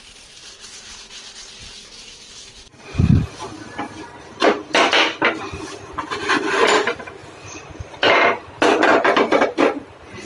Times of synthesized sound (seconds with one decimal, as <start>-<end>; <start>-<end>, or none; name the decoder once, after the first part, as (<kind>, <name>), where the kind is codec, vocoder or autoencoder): 7.2-8.5 (vocoder, BigVGAN v2); 8.9-10.2